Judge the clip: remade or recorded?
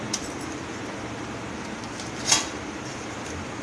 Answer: recorded